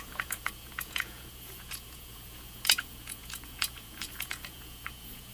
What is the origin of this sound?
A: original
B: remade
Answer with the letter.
B